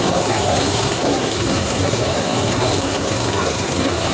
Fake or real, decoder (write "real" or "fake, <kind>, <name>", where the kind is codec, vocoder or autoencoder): fake, codec, SNAC